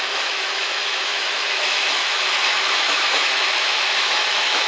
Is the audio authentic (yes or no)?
no